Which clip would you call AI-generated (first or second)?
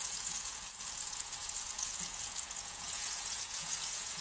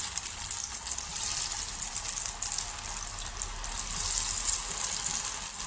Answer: first